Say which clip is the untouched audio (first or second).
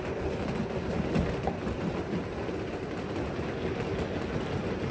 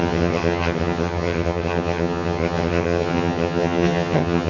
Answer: first